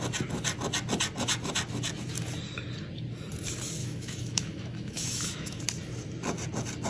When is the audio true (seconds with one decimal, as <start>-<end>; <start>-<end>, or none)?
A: 0.0-3.8; 5.6-6.9